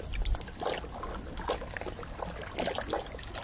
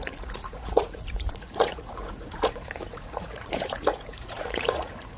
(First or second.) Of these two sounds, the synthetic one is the second